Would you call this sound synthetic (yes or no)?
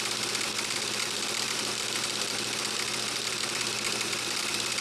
yes